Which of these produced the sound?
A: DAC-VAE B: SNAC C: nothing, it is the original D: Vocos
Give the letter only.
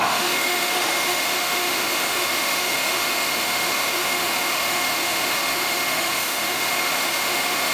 A